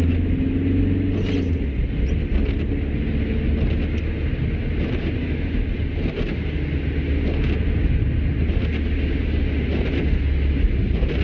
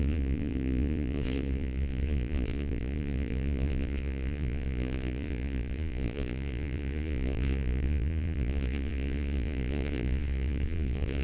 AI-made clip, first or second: second